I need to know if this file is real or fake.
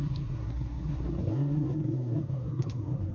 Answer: fake